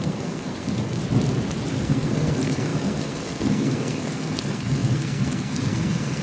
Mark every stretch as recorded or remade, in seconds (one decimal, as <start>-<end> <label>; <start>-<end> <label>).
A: 0.0-1.0 remade; 1.0-1.8 recorded; 1.8-6.2 remade